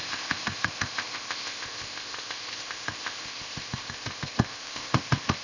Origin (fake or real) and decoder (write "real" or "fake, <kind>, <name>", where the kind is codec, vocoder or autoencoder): fake, codec, ZipCodec